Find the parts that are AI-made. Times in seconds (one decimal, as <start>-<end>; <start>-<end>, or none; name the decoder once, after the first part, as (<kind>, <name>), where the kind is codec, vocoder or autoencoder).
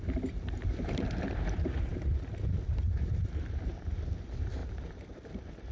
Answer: 0.0-5.7 (vocoder, BigVGAN v2)